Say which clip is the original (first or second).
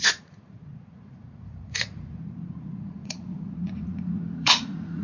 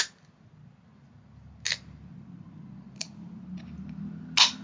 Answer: second